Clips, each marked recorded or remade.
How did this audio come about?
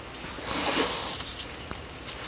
recorded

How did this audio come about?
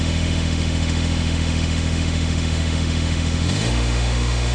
remade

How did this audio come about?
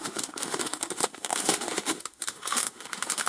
remade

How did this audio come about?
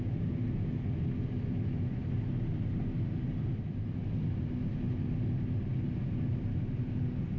recorded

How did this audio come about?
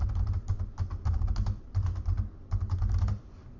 recorded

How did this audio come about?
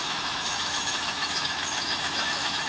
remade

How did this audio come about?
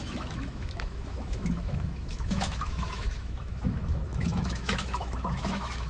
remade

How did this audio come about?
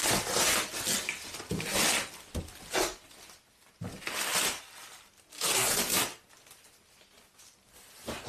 recorded